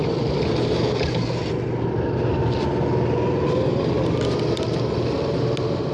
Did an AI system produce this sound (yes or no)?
no